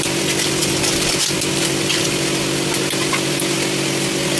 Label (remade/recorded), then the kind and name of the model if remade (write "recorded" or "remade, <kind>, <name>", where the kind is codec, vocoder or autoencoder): recorded